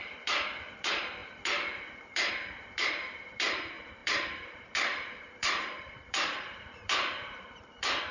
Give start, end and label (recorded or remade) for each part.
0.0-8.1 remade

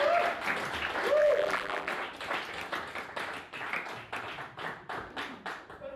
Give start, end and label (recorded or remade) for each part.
0.0-1.2 recorded; 1.2-1.9 remade; 1.9-6.0 recorded

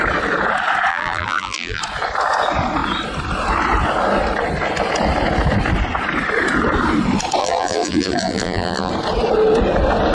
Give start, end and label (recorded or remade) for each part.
0.0-0.9 recorded; 0.9-1.8 remade; 1.8-7.4 recorded; 7.4-8.9 remade; 8.9-10.1 recorded

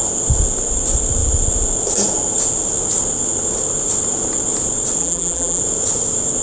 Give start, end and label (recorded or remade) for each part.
0.0-5.0 recorded; 5.0-5.6 remade; 5.6-6.4 recorded

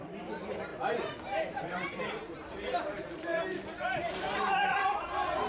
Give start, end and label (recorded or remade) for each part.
0.0-3.3 remade; 3.3-4.0 recorded; 4.0-5.5 remade

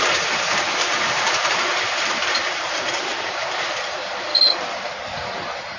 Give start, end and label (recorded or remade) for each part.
0.0-4.3 remade; 4.3-4.8 recorded; 4.8-5.8 remade

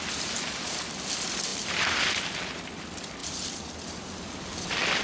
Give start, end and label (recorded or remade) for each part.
0.0-3.2 remade; 3.2-4.0 recorded; 4.0-5.0 remade